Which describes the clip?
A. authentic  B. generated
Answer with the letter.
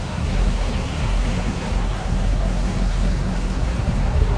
B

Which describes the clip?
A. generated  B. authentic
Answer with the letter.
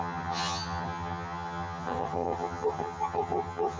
A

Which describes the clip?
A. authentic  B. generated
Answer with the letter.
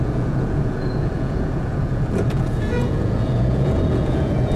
B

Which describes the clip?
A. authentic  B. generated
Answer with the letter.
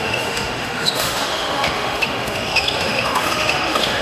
B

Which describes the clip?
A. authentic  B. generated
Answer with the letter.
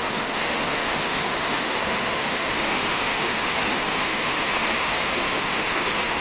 B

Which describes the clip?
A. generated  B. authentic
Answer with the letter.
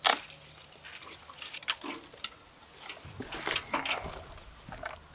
B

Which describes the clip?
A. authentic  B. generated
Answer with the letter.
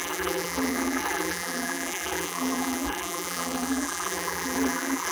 B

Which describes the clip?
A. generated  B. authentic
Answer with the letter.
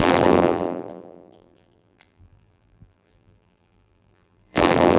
A